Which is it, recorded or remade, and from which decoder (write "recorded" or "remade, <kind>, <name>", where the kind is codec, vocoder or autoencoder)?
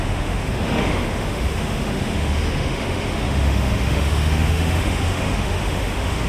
remade, autoencoder, DAC-VAE